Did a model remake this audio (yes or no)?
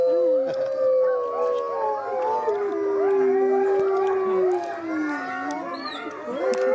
no